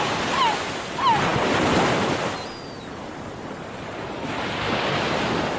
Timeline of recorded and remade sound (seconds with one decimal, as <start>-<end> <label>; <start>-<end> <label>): 0.0-5.6 recorded